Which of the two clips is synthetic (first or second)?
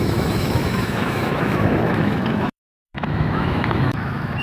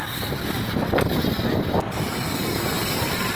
first